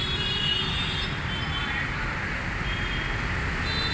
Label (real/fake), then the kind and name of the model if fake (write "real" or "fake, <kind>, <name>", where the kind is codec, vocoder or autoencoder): real